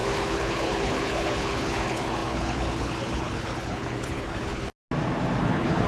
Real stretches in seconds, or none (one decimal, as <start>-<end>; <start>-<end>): 4.7-5.4